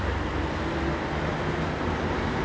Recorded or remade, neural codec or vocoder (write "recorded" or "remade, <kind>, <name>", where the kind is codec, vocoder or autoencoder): recorded